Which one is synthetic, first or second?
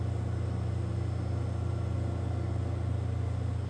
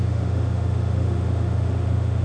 second